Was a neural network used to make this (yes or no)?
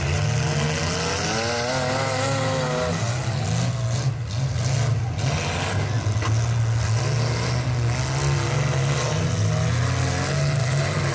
no